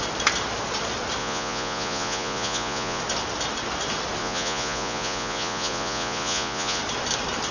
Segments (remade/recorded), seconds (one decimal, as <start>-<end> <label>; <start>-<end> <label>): 0.0-1.2 recorded; 1.2-3.0 remade; 3.0-4.2 recorded; 4.2-6.8 remade; 6.8-7.5 recorded